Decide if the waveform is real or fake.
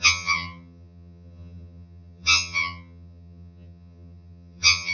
fake